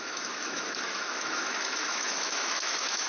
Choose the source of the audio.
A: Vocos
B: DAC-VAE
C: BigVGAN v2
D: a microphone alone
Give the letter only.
B